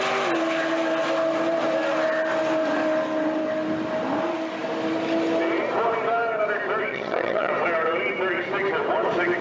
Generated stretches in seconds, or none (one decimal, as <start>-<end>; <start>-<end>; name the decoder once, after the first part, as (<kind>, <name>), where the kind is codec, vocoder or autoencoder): 6.9-7.5 (vocoder, HiFi-GAN)